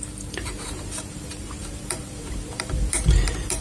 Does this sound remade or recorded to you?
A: remade